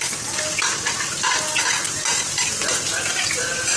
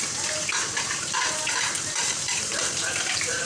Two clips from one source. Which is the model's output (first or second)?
second